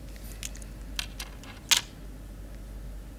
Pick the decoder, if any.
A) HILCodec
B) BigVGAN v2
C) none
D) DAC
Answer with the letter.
C